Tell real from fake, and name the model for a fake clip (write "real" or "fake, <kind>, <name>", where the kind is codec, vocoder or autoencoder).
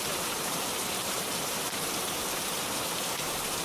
fake, vocoder, BigVGAN v2